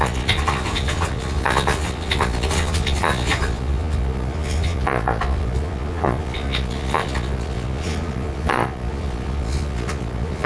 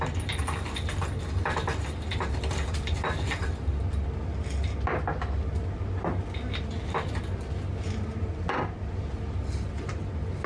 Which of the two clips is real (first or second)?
second